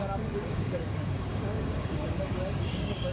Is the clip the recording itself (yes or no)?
no